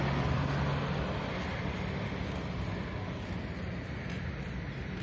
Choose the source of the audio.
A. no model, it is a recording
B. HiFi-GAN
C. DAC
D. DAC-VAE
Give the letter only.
A